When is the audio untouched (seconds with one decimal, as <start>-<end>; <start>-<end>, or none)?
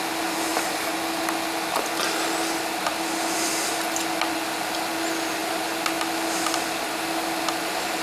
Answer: 0.0-8.0